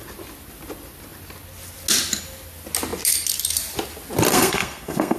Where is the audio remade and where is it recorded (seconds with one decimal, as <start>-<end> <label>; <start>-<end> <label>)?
0.0-4.3 recorded; 4.3-5.2 remade